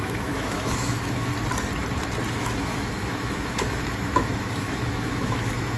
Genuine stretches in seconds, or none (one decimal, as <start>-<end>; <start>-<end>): 1.3-2.3

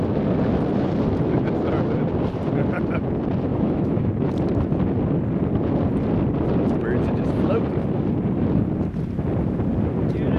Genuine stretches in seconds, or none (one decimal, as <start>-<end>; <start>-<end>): 0.0-3.5; 4.1-10.4

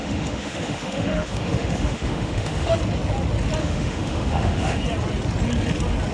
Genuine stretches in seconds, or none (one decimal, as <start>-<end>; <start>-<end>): 2.8-3.6; 4.8-6.1

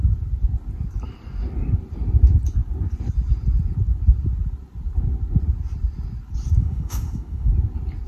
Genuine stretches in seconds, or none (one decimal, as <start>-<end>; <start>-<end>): 0.0-6.6; 7.5-8.1

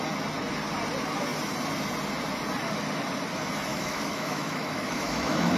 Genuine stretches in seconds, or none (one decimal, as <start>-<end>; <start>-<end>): 0.0-3.7